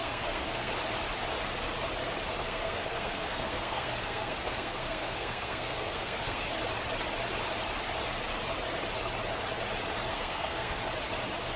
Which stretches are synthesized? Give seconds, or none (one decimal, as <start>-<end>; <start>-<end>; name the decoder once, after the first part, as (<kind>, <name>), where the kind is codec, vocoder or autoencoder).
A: 0.0-0.7 (codec, SNAC); 2.4-6.4; 10.1-10.8